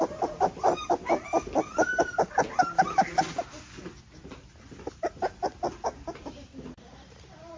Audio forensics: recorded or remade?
recorded